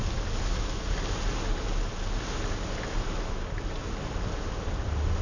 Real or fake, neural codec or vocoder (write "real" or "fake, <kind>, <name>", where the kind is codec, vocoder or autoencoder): real